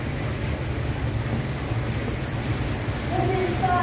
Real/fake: real